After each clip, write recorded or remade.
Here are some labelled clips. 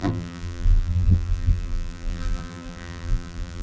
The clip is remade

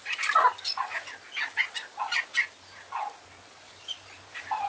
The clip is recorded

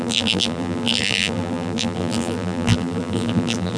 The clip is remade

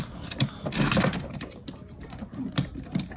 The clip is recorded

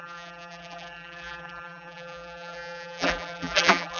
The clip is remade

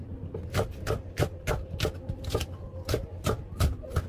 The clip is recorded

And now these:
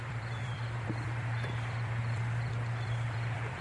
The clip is remade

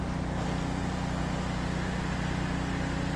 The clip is recorded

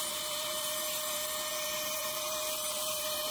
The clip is remade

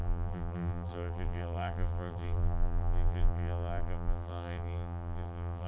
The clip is remade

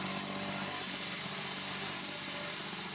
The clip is remade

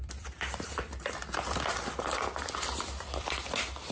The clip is remade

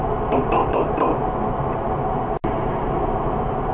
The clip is recorded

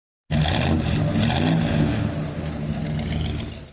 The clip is recorded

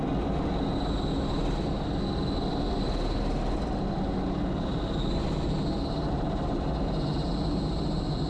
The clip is recorded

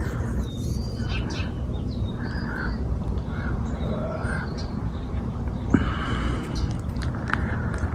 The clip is remade